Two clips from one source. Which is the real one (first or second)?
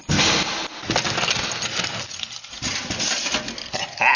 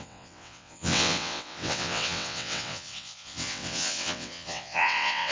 first